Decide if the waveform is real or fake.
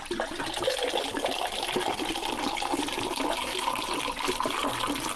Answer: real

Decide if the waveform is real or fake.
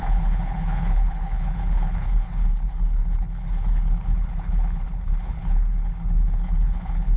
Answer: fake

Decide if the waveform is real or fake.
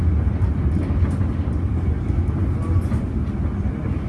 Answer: real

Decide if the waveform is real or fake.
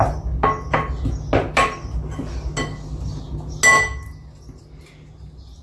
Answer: real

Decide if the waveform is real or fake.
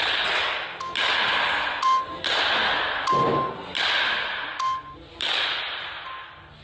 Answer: real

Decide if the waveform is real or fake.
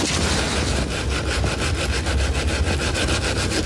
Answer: real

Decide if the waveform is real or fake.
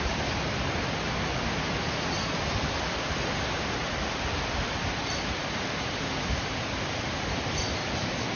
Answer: real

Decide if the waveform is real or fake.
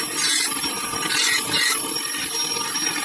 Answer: real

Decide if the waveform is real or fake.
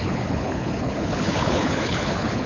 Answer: fake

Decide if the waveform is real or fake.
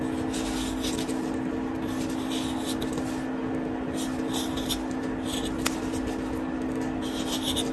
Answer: real